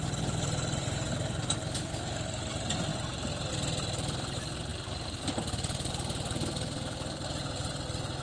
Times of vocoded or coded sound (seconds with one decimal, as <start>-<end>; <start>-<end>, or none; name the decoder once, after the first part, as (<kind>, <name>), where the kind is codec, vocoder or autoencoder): none